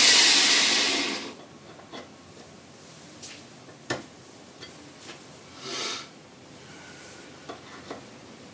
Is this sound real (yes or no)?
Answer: yes